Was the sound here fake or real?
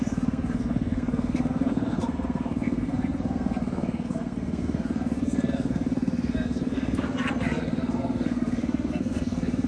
fake